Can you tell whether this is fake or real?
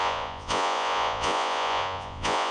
fake